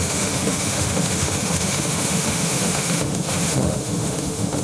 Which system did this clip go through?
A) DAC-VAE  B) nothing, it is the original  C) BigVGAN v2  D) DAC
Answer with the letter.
A